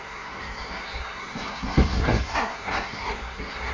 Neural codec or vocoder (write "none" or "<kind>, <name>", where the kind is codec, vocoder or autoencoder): codec, SNAC